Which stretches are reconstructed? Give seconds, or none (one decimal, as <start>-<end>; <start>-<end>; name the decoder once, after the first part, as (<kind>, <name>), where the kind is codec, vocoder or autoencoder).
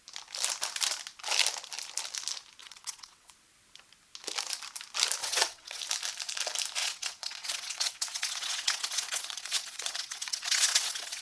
2.6-3.3 (vocoder, WaveNeXt); 5.2-5.8; 6.8-11.2